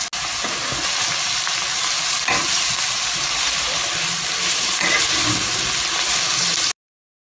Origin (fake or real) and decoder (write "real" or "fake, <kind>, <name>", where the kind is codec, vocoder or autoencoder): real